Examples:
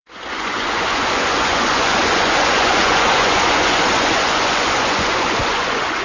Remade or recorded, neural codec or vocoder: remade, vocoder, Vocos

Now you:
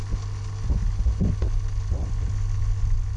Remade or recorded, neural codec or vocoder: recorded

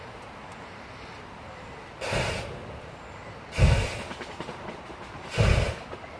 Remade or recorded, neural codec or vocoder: recorded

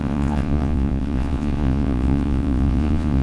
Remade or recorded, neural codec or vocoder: remade, vocoder, Vocos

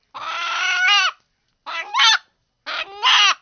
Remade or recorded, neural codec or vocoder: recorded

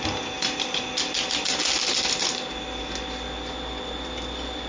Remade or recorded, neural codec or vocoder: recorded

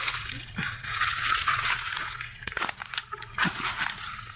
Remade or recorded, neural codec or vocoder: remade, vocoder, Vocos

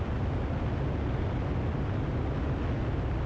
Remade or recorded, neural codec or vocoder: recorded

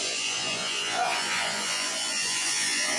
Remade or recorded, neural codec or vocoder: remade, vocoder, Vocos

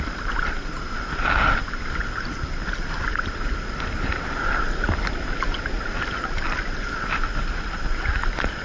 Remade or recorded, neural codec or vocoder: recorded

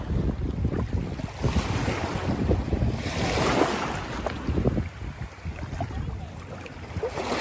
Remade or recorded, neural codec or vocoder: recorded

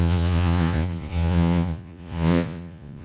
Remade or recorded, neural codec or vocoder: remade, vocoder, Vocos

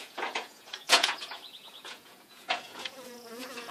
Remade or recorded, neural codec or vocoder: remade, vocoder, Vocos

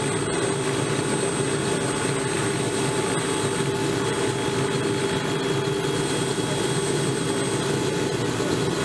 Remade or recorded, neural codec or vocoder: recorded